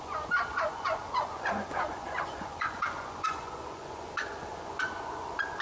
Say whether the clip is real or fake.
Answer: fake